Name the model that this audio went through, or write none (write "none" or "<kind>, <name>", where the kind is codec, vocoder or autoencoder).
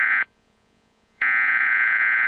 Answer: vocoder, Vocos